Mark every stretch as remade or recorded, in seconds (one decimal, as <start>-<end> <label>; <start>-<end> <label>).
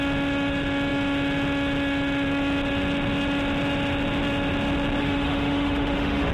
0.0-5.0 recorded; 5.0-6.3 remade